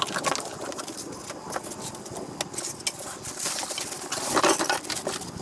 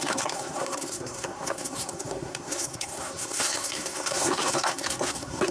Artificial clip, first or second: second